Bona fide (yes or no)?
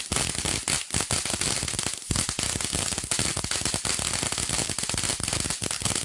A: yes